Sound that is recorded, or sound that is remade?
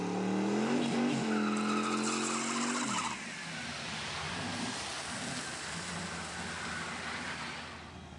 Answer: recorded